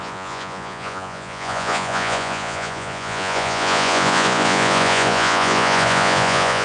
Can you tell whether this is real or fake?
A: fake